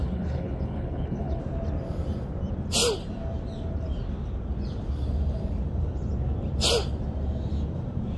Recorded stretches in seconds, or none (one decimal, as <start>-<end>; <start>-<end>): 1.4-8.2